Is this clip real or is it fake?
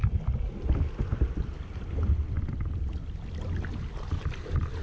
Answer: real